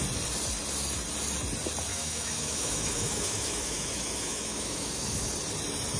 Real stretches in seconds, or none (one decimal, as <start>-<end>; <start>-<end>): 0.0-1.9; 5.3-6.0